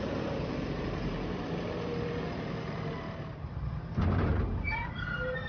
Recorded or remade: remade